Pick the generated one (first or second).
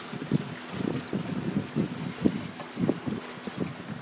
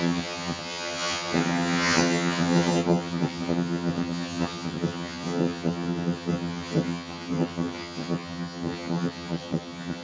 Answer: second